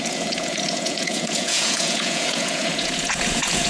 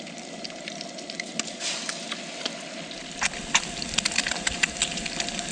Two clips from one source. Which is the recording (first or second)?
second